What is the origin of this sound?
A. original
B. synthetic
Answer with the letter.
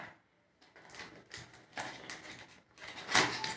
A